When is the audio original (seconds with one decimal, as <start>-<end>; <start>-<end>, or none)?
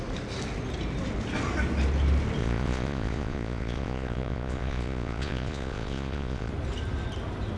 0.0-2.4; 6.5-7.6